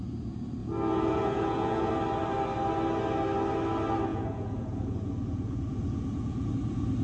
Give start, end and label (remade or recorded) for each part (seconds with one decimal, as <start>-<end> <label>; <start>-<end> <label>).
0.0-0.6 recorded; 0.6-1.9 remade; 1.9-4.1 recorded; 4.1-6.5 remade; 6.5-7.0 recorded